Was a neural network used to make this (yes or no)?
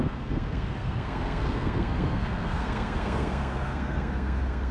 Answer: yes